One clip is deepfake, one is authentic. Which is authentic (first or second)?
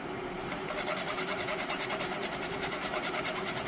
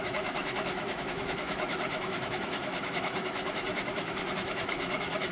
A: first